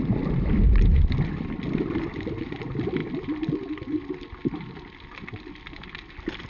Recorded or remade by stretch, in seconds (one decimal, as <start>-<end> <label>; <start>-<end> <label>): 0.0-6.5 recorded